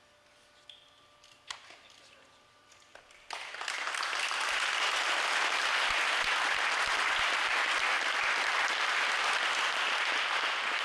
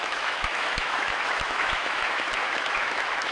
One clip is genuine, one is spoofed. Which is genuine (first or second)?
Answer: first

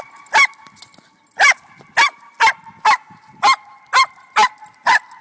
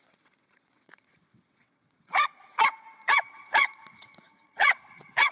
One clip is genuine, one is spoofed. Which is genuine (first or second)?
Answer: first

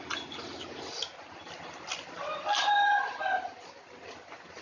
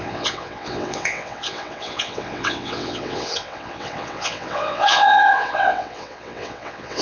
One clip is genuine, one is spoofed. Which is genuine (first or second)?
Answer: first